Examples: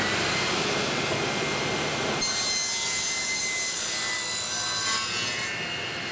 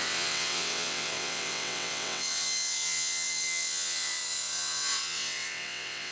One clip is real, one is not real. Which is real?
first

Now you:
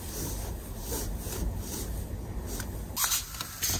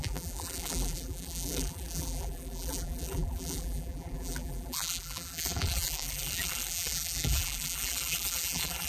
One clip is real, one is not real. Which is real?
first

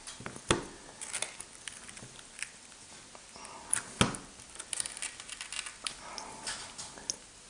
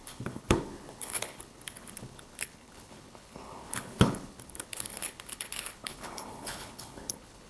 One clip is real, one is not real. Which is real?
first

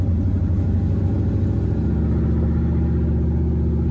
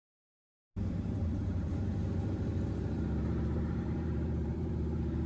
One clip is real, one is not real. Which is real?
first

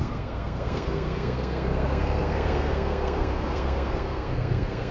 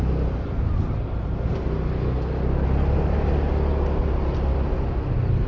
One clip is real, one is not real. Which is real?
second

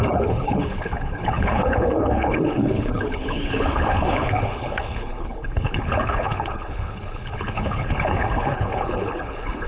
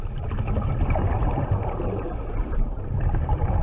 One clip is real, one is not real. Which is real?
second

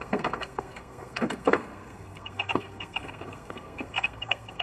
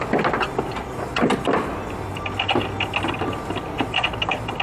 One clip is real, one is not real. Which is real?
second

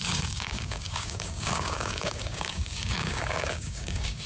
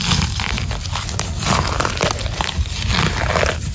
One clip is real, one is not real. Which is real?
second